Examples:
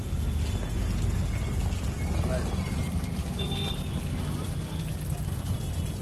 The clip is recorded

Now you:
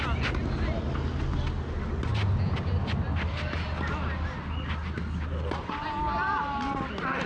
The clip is recorded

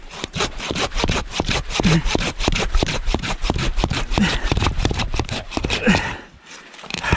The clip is remade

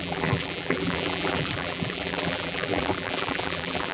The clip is remade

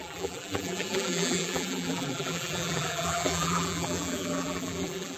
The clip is remade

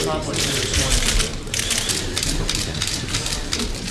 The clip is remade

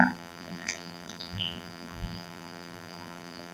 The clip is remade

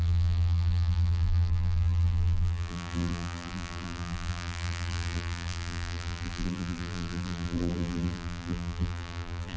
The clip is remade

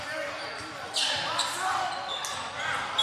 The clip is recorded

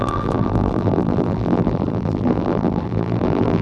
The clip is remade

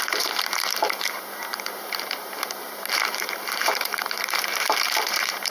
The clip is remade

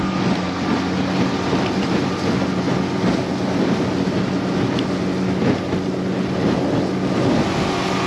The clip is recorded